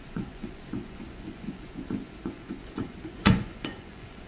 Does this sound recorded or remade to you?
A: remade